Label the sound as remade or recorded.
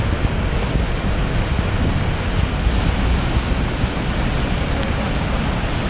recorded